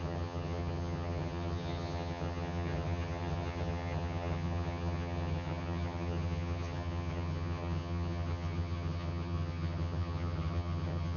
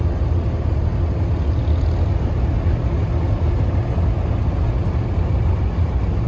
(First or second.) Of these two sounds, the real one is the second